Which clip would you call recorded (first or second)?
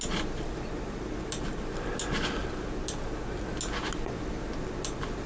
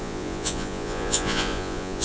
first